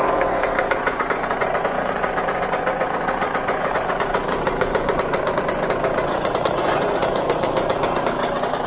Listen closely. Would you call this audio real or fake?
fake